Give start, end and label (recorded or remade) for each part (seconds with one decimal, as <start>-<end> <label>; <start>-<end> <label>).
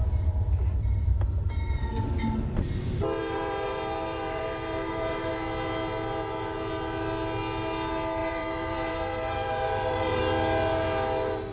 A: 0.0-1.5 remade; 1.5-3.2 recorded; 3.2-5.3 remade; 5.3-8.2 recorded; 8.2-10.2 remade; 10.2-11.5 recorded